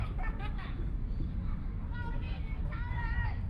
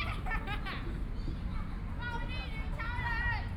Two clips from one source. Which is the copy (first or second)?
first